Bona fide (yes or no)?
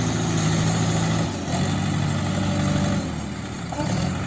yes